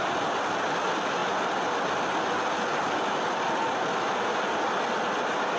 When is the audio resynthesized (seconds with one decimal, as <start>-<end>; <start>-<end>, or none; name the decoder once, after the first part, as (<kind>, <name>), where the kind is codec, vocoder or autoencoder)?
none